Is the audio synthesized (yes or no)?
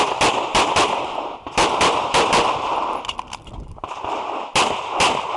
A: no